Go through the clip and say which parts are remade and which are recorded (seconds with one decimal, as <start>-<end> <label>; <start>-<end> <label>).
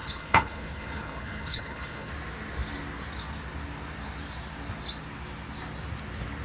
0.0-2.1 remade; 2.1-6.4 recorded